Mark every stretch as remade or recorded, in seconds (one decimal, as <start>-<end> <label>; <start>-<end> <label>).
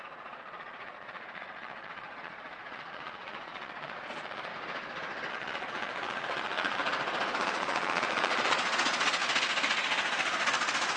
0.0-4.5 remade; 4.5-5.3 recorded; 5.3-6.8 remade; 6.8-7.4 recorded; 7.4-9.2 remade; 9.2-11.0 recorded